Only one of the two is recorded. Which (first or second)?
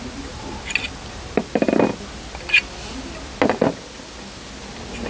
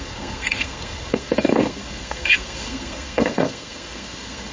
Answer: first